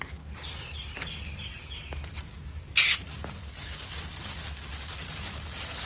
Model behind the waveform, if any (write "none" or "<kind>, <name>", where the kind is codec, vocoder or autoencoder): none